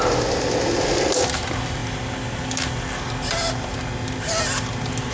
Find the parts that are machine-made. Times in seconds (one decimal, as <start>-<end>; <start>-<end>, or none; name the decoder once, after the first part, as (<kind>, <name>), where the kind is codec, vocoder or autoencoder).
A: none